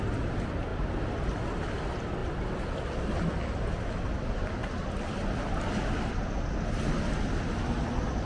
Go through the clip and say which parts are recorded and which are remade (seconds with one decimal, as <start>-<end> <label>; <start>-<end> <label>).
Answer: 0.0-8.3 recorded